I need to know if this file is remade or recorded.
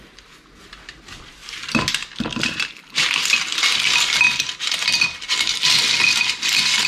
recorded